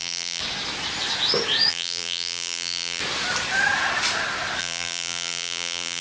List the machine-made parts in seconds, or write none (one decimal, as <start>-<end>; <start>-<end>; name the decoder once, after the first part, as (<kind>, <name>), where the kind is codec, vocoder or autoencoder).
0.0-0.4 (vocoder, BigVGAN v2); 1.7-3.0; 4.6-6.0